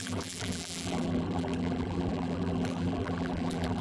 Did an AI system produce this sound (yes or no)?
yes